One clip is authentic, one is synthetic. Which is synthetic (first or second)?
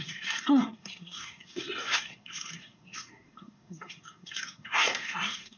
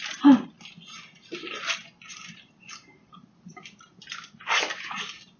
first